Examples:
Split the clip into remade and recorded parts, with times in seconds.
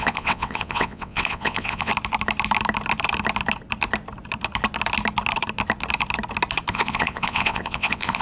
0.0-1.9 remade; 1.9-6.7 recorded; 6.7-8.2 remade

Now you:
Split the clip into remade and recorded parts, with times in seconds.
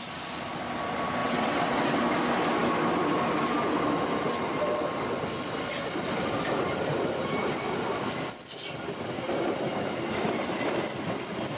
0.0-1.2 recorded; 1.2-2.0 remade; 2.0-11.6 recorded